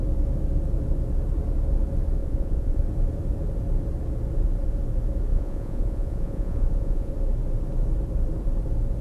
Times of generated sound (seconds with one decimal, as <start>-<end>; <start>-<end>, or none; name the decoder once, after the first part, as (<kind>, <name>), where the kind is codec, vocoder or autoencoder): 2.2-2.8 (vocoder, Vocos); 5.3-7.1